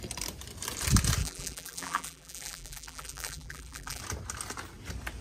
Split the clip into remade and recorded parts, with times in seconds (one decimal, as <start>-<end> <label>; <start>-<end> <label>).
0.0-1.2 recorded; 1.2-4.0 remade; 4.0-5.2 recorded